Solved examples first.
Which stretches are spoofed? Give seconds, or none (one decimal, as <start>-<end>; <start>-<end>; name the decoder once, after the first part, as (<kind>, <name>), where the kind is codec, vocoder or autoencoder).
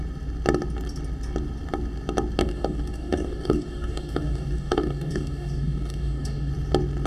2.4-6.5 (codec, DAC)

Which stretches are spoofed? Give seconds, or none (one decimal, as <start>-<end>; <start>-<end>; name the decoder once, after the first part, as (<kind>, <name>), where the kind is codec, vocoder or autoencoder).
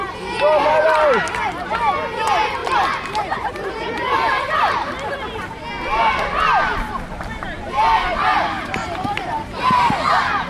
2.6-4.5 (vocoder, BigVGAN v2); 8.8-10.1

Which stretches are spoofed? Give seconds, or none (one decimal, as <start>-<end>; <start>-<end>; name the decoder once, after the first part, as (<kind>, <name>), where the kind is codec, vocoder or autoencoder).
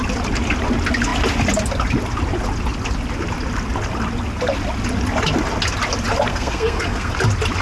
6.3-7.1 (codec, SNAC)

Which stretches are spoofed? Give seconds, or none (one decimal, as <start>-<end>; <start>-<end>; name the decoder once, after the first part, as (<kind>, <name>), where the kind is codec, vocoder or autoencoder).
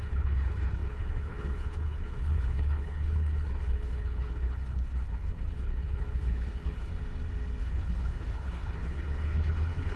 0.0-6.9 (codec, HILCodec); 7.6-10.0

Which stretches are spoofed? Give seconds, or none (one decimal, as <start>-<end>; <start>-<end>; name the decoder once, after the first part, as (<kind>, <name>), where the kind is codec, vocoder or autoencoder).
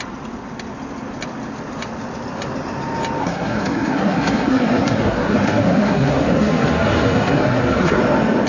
3.2-8.0 (codec, SNAC)